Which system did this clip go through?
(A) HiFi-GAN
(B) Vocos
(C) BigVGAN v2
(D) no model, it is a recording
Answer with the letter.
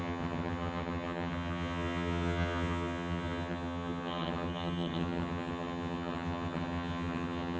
A